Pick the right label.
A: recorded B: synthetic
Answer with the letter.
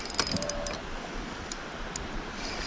A